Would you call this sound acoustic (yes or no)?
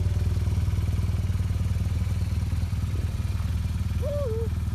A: yes